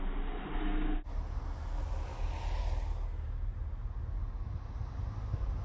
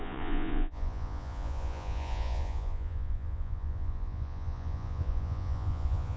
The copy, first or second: second